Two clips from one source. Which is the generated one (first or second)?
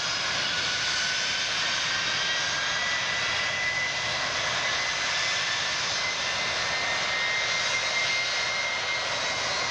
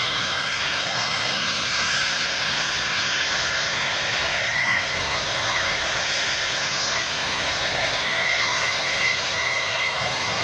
second